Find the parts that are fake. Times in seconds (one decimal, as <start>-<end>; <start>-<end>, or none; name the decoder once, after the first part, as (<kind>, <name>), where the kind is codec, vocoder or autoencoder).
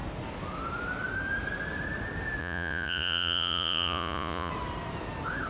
2.4-4.5 (vocoder, Vocos)